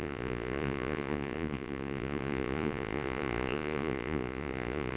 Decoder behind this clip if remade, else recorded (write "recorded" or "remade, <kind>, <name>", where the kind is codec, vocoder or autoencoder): remade, vocoder, Vocos